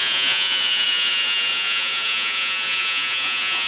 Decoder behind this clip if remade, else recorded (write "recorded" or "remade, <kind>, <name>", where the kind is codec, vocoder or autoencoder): remade, vocoder, Vocos